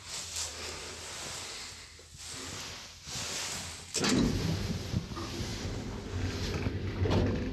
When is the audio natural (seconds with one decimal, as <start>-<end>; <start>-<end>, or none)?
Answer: 0.0-7.5